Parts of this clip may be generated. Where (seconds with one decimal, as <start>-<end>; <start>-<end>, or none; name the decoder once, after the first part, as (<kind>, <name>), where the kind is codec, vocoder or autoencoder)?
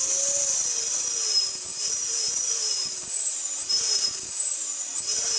1.7-4.9 (vocoder, BigVGAN v2)